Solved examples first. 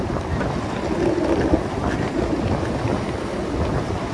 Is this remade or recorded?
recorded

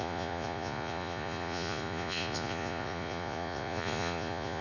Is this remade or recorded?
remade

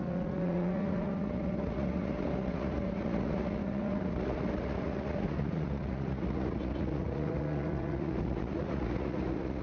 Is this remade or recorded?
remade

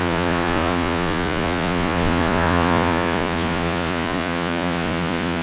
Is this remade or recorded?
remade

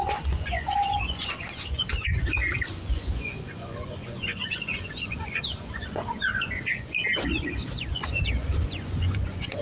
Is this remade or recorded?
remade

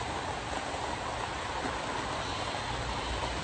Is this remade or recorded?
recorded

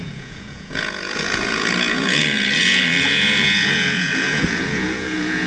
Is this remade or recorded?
remade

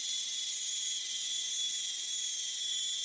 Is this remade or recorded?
recorded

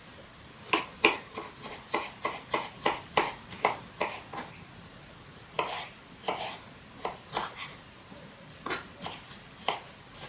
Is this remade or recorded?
recorded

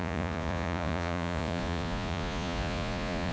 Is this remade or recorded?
remade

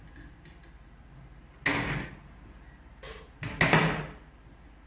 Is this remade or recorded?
recorded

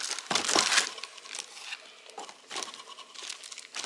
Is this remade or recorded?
recorded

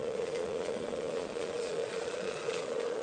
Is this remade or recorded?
remade